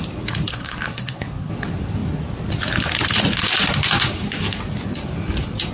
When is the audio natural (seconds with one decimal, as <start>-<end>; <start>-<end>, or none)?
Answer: 0.0-0.5; 1.5-5.7